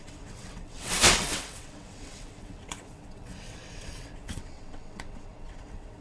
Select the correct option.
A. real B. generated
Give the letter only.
B